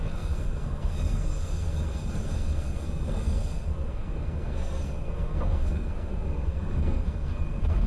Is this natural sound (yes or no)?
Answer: no